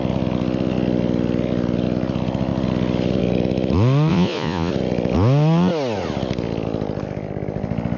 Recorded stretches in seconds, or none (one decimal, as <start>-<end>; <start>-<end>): 0.0-4.1; 4.7-8.0